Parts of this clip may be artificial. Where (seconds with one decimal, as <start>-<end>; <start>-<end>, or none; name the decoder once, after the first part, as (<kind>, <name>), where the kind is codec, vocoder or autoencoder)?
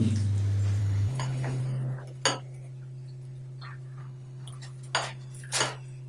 0.8-1.6 (codec, HILCodec); 4.0-4.5